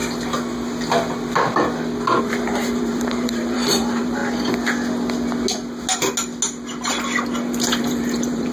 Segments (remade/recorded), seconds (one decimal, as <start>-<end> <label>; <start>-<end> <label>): 0.0-2.2 recorded; 2.2-4.2 remade; 4.2-7.8 recorded; 7.8-8.5 remade